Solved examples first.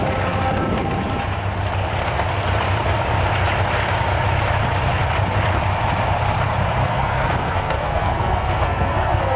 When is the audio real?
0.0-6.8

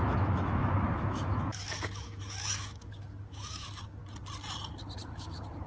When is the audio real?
4.0-5.1

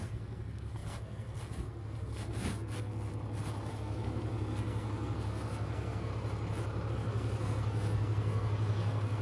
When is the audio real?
3.1-3.7; 6.1-6.9

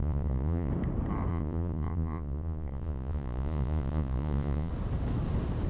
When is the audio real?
0.7-1.3; 4.7-5.7

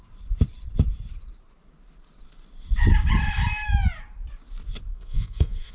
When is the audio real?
0.0-4.9

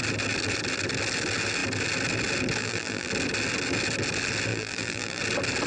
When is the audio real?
0.0-2.6; 3.1-4.5; 5.2-5.7

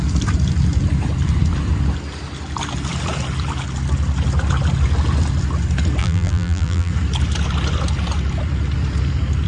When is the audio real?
0.0-6.0; 6.9-9.5

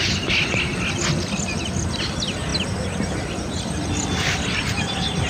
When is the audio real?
0.0-5.3